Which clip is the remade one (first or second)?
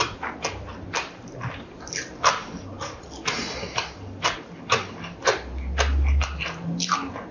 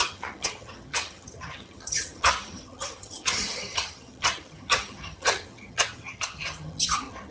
second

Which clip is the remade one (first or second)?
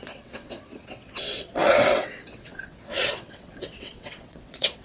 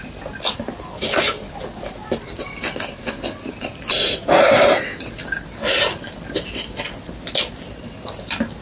first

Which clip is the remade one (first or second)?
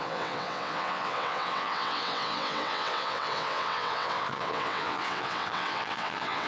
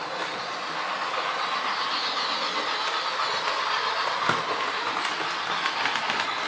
first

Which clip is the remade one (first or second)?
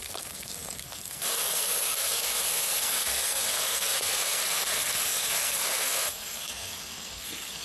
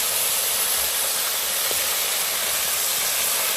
first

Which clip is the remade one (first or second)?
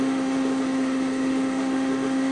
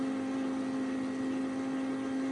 first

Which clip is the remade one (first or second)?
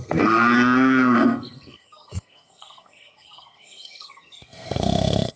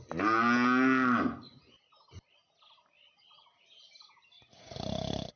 first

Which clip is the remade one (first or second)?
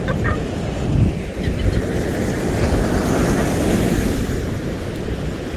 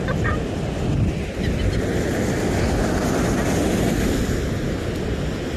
first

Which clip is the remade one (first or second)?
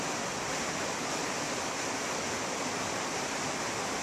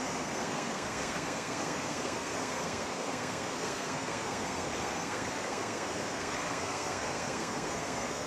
second